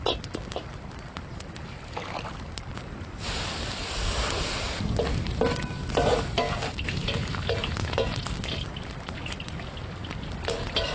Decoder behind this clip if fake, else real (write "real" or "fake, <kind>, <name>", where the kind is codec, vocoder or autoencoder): real